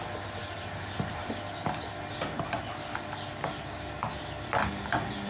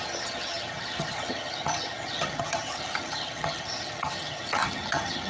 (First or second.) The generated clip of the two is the second